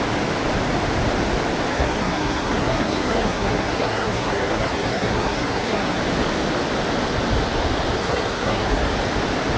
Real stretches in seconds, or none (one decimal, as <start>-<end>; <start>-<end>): 0.0-1.7; 6.0-8.0; 8.9-9.6